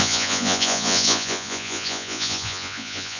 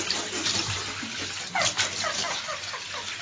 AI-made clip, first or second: first